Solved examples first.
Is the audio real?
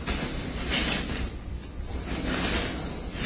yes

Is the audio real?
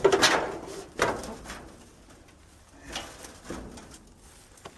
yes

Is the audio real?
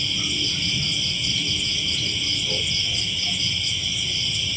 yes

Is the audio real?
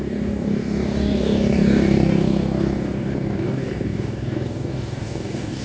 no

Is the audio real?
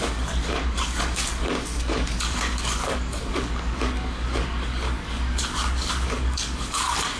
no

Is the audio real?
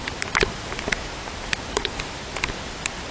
yes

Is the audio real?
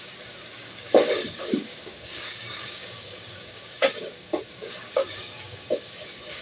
no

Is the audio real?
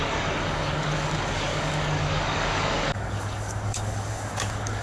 no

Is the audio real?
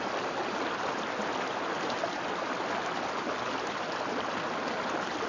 yes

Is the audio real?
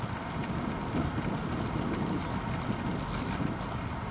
yes